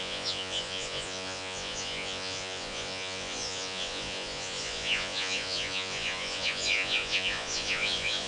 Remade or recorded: remade